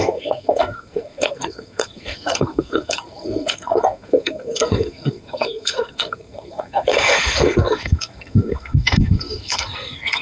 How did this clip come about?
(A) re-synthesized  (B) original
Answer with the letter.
A